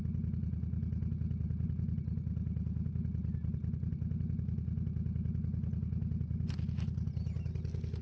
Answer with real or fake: real